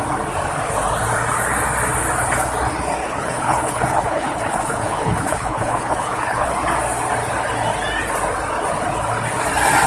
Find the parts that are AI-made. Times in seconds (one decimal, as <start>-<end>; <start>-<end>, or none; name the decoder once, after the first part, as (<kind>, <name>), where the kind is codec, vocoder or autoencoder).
3.0-6.5 (codec, HILCodec)